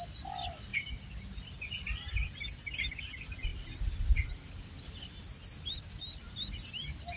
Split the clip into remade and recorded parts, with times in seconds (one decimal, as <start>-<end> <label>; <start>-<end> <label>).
0.0-7.2 recorded